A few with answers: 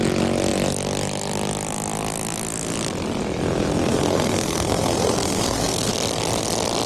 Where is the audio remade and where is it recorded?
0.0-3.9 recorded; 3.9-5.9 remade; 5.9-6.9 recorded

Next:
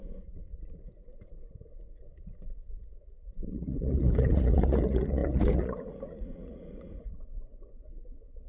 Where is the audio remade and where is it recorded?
0.0-8.5 remade